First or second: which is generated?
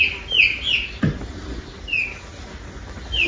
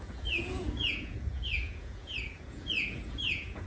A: second